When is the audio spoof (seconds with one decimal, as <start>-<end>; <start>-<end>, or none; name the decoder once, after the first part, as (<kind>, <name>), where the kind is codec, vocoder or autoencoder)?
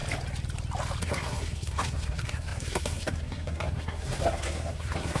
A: 1.0-5.2 (codec, SNAC)